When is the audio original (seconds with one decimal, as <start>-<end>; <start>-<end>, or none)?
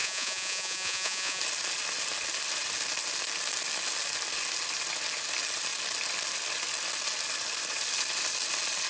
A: 1.4-8.9